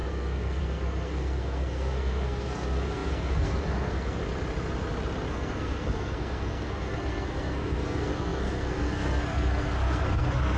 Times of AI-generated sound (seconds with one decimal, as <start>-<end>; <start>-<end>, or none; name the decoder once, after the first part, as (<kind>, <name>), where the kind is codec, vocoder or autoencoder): 0.0-4.2 (codec, SNAC); 5.3-10.6